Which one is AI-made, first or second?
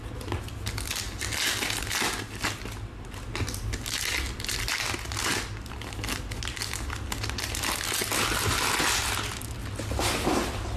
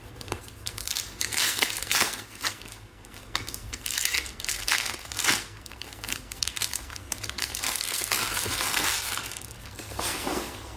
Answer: second